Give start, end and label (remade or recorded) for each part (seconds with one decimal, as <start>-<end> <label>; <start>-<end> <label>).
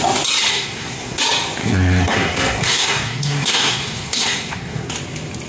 0.0-0.5 recorded; 0.5-1.2 remade; 1.2-1.6 recorded; 1.6-4.9 remade; 4.9-5.5 recorded